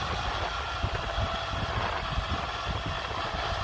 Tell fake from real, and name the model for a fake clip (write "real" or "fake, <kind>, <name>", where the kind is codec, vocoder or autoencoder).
real